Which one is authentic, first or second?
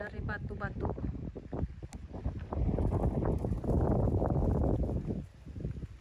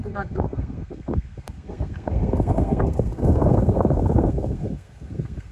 first